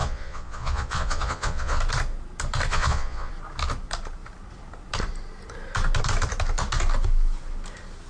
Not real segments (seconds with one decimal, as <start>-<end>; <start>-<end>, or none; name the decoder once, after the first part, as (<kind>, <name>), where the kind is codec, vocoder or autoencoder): 0.0-1.8 (vocoder, Vocos); 2.7-3.3